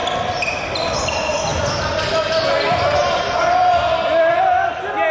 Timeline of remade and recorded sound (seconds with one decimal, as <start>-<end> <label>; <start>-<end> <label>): 0.0-5.1 recorded